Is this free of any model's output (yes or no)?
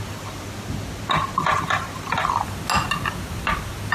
yes